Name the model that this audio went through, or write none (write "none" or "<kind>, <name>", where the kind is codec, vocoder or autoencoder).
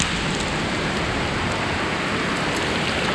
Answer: none